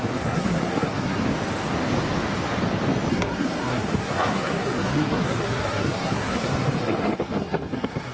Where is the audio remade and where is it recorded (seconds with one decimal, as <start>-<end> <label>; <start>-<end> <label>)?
0.0-1.2 remade; 1.2-3.1 recorded; 3.1-8.1 remade